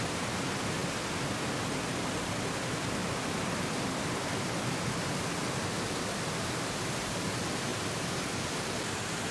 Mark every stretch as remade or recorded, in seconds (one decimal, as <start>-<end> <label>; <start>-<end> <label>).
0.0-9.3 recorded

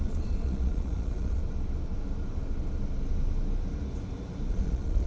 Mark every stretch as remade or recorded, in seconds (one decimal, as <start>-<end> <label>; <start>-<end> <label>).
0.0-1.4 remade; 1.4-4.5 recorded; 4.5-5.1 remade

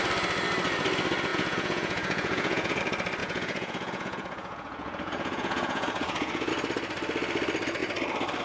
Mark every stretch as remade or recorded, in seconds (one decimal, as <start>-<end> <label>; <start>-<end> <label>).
0.0-1.3 recorded; 1.3-2.8 remade; 2.8-3.2 recorded; 3.2-6.5 remade; 6.5-8.4 recorded

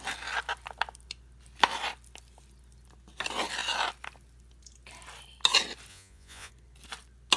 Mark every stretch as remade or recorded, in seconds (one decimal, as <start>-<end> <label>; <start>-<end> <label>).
0.0-5.9 recorded; 5.9-6.5 remade; 6.5-7.4 recorded

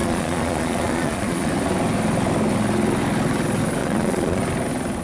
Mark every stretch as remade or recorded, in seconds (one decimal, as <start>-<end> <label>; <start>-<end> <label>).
0.0-1.5 remade; 1.5-3.8 recorded; 3.8-4.4 remade; 4.4-5.0 recorded

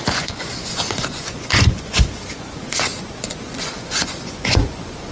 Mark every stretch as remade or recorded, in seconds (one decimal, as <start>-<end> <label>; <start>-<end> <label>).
0.0-5.1 remade

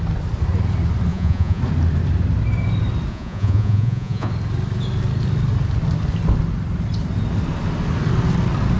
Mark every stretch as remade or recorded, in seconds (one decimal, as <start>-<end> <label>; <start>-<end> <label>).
0.0-1.1 recorded; 1.1-1.6 remade; 1.6-3.1 recorded; 3.1-4.3 remade; 4.3-8.8 recorded

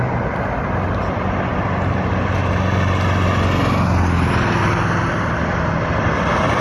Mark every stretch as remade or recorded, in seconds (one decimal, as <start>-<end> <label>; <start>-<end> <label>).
0.0-6.6 recorded